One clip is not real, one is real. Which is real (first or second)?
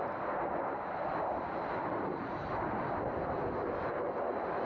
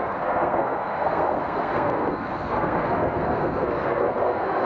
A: first